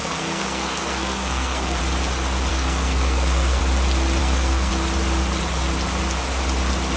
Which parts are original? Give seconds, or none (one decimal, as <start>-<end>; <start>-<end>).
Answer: 1.8-2.5; 3.6-4.2; 4.7-7.0